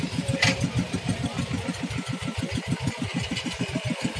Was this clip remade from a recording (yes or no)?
no